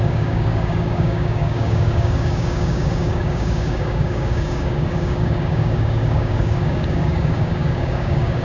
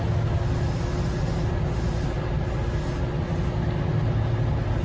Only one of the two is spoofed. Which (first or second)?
first